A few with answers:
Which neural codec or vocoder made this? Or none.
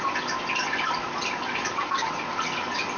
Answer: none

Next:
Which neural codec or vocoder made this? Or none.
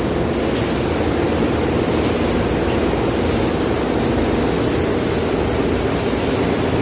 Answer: none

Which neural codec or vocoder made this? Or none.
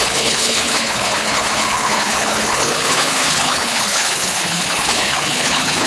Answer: codec, HILCodec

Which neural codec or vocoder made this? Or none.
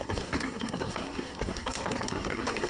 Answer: codec, SNAC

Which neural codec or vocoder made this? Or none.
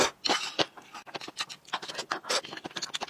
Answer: none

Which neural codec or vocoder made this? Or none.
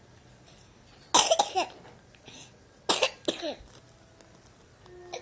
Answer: none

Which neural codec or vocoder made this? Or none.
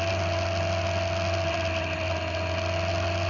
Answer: none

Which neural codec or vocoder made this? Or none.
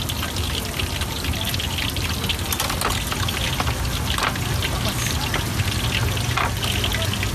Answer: none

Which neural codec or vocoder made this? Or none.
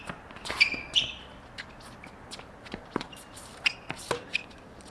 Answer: none